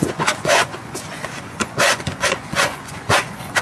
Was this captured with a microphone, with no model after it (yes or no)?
no